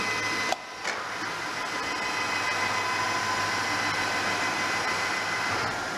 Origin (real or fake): real